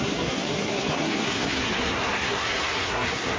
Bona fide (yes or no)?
no